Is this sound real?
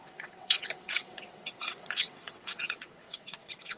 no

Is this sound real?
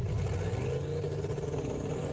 yes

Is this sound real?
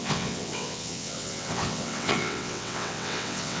no